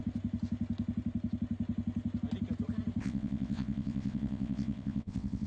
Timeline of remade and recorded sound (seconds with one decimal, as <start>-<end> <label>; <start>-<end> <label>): 0.0-3.0 recorded; 3.0-5.5 remade